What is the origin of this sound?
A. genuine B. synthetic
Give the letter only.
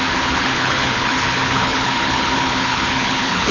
B